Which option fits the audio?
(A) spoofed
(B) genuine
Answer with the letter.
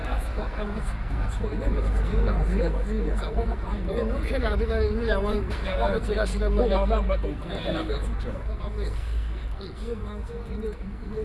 A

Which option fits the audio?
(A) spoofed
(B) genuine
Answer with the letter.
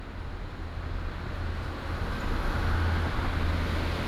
B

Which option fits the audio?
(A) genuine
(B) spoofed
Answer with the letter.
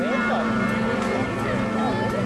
A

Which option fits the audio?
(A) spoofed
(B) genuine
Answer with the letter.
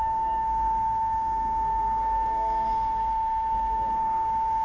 A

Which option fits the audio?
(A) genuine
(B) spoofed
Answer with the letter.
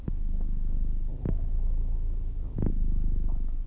A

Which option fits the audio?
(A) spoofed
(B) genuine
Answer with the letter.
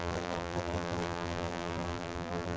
A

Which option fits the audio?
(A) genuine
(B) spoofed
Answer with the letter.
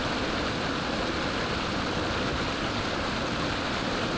A